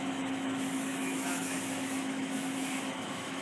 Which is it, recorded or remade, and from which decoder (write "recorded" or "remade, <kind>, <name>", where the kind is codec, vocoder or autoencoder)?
remade, autoencoder, DAC-VAE